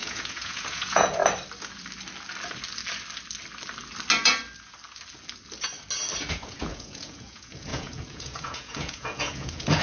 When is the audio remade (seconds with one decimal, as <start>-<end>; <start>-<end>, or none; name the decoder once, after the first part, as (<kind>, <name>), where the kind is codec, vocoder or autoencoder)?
0.0-1.2 (vocoder, Vocos); 6.3-9.8